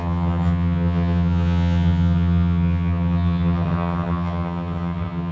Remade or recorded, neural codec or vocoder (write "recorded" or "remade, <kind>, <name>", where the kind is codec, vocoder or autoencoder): remade, vocoder, HiFi-GAN